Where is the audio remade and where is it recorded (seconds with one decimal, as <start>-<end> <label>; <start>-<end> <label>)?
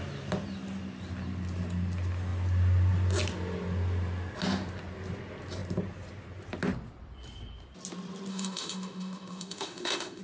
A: 0.0-8.3 recorded; 8.3-10.2 remade